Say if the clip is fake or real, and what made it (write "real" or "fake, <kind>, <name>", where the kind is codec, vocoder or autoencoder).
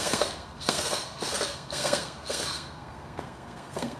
fake, codec, SNAC